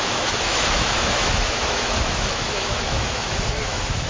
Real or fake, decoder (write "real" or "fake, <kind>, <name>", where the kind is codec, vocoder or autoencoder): fake, autoencoder, DAC-VAE